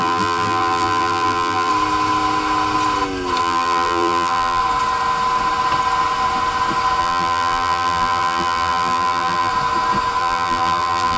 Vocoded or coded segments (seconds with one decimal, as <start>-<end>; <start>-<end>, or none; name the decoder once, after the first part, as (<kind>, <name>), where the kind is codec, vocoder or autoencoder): 0.0-1.7 (vocoder, BigVGAN v2); 3.4-4.6; 7.0-9.5; 10.2-11.2